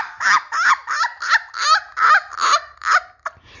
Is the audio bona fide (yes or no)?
yes